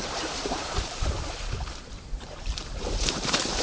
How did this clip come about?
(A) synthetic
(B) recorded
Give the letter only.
A